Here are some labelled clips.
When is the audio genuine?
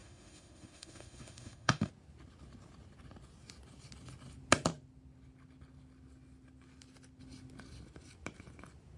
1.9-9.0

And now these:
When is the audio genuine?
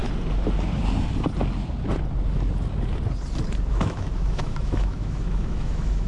0.0-3.7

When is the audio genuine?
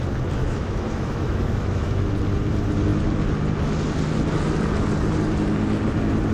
0.0-0.4; 2.1-6.3